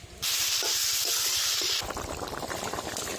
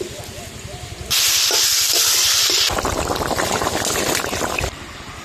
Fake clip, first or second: first